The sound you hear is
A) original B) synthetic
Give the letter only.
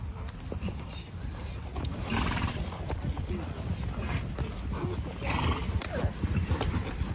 A